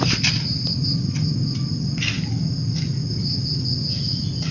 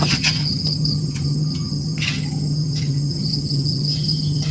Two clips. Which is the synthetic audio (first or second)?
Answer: second